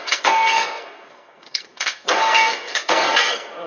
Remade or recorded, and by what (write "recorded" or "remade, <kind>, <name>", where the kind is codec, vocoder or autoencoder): remade, codec, SNAC